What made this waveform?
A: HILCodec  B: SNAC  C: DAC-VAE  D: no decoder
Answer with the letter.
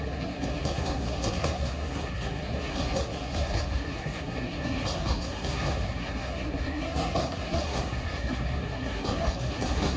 B